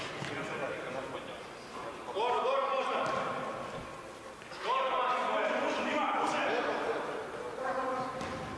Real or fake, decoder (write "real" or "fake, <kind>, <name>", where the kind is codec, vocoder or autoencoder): real